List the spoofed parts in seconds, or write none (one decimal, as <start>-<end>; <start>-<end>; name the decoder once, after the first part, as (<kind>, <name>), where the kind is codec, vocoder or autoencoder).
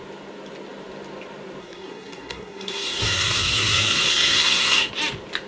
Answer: 1.6-4.9 (codec, SNAC)